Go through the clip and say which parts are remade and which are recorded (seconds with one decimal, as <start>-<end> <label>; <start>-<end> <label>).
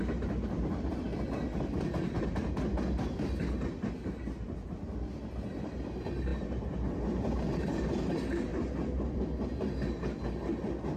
0.0-8.5 recorded; 8.5-9.2 remade; 9.2-11.0 recorded